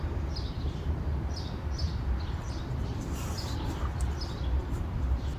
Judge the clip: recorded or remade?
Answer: recorded